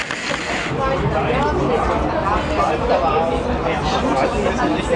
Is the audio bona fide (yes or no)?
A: yes